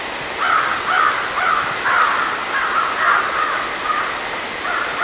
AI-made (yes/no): no